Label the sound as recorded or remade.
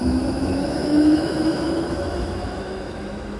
remade